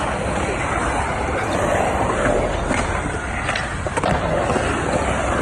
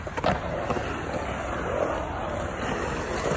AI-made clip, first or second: first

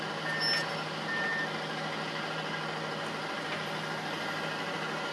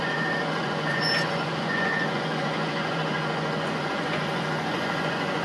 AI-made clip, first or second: second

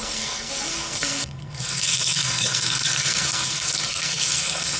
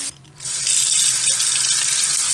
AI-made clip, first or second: first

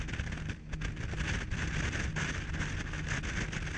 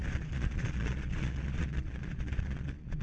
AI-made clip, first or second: second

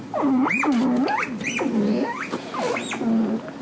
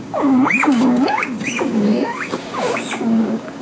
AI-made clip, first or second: second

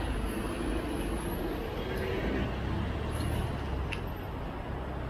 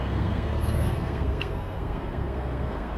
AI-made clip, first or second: second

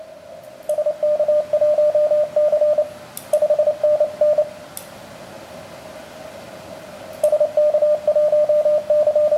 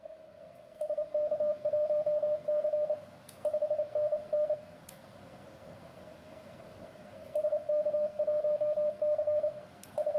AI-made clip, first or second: second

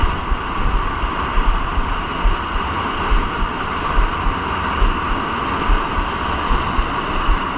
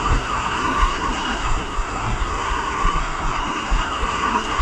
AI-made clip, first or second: second